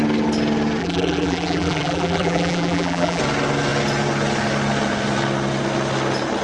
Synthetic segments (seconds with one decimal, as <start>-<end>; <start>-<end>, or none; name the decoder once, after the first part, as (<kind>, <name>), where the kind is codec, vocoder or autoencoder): 0.8-3.2 (vocoder, BigVGAN v2)